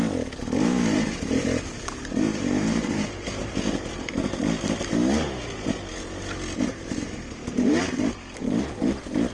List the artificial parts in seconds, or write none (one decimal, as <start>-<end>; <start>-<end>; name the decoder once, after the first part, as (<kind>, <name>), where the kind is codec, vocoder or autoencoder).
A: 0.4-3.5 (vocoder, BigVGAN v2); 6.7-7.8